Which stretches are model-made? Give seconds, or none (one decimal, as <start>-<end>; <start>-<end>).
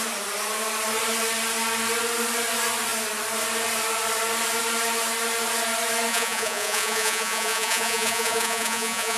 6.1-9.2